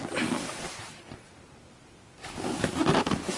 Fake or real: real